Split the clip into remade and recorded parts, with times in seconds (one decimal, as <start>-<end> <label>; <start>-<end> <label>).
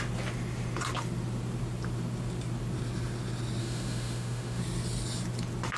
0.0-3.6 recorded; 3.6-4.6 remade; 4.6-5.8 recorded